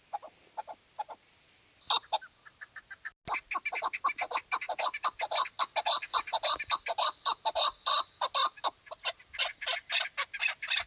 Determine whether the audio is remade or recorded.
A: recorded